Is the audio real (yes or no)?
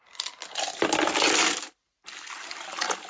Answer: yes